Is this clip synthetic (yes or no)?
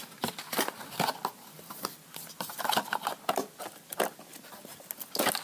no